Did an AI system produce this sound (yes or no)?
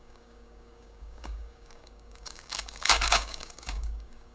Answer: yes